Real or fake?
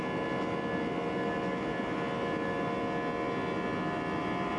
real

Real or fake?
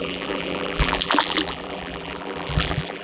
fake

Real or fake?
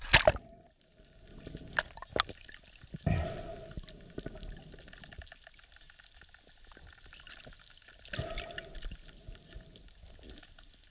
real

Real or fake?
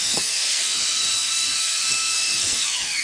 fake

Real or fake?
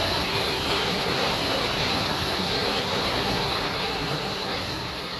fake